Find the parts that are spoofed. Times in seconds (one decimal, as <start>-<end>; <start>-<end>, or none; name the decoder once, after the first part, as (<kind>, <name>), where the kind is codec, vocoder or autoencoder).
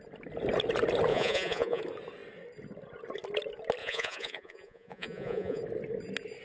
1.1-1.8 (vocoder, Vocos); 3.8-5.6